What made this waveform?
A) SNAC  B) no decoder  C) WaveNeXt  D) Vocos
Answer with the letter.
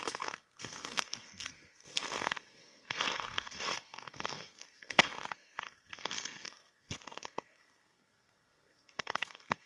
A